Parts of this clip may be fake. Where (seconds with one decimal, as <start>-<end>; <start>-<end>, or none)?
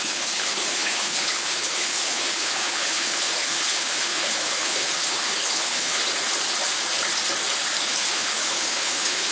0.0-6.0; 7.8-9.3